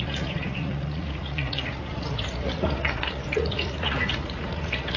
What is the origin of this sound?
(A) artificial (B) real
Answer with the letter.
A